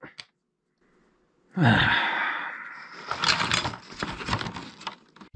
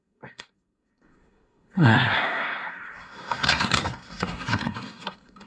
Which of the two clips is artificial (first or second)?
second